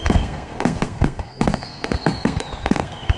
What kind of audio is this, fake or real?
fake